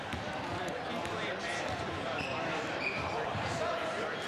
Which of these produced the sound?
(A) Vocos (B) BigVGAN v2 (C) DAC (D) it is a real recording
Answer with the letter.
B